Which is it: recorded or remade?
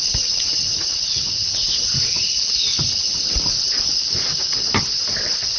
recorded